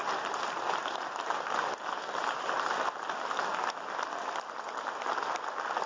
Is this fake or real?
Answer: real